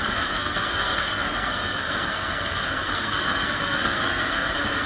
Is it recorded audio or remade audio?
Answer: remade